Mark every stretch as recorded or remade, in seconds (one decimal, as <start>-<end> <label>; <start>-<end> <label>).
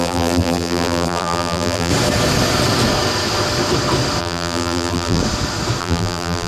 0.0-1.9 remade; 1.9-4.2 recorded; 4.2-5.2 remade; 5.2-5.8 recorded; 5.8-6.5 remade